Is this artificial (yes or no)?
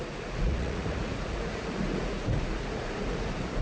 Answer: yes